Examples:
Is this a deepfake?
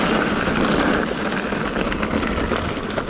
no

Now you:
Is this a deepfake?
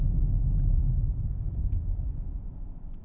yes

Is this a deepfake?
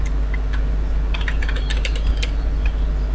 no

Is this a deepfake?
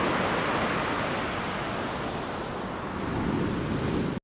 no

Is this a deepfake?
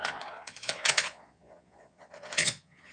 yes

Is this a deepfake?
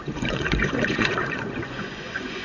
yes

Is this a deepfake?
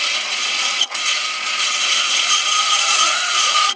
yes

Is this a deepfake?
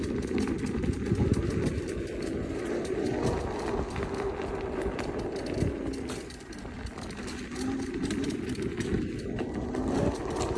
no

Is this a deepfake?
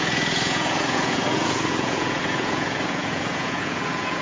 yes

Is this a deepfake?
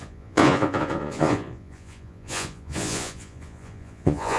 yes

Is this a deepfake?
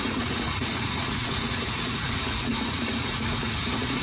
yes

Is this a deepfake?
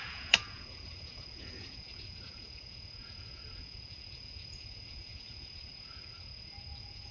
yes